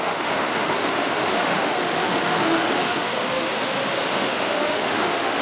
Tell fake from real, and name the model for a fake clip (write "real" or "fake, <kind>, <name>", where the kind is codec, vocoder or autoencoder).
fake, autoencoder, DAC-VAE